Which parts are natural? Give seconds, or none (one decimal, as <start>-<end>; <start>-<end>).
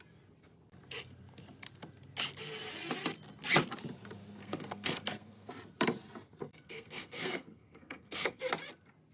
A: 0.0-4.4; 5.5-6.4; 8.4-9.1